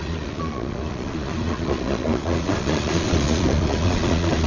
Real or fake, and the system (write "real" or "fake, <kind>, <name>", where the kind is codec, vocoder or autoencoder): fake, vocoder, Vocos